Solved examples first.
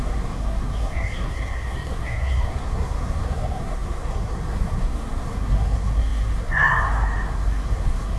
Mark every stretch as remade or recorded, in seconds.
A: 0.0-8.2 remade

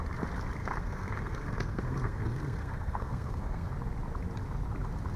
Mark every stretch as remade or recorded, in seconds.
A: 0.0-0.6 recorded; 0.6-3.7 remade; 3.7-5.2 recorded